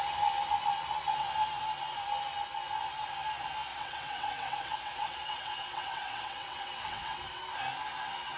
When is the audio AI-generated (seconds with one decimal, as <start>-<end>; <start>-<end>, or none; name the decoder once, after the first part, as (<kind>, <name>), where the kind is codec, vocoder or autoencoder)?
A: 3.7-7.4 (vocoder, WaveNeXt)